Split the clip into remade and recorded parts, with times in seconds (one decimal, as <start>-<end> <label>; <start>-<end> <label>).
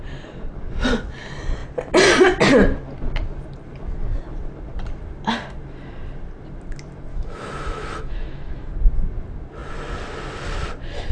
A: 0.0-7.1 recorded; 7.1-8.7 remade; 8.7-11.1 recorded